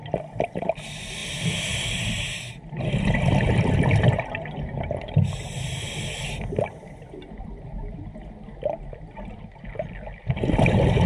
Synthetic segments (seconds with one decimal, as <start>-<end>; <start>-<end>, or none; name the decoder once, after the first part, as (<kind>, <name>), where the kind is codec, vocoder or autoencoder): none